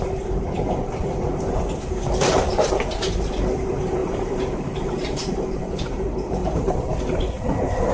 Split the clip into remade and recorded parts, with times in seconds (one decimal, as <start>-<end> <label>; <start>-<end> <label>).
0.0-4.0 recorded; 4.0-6.0 remade; 6.0-6.4 recorded; 6.4-7.4 remade; 7.4-7.9 recorded